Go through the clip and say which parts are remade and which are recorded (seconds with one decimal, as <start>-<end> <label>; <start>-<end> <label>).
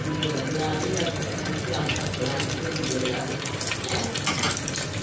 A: 0.0-5.0 recorded